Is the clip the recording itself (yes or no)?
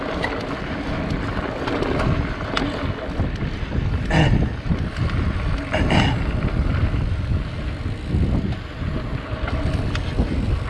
yes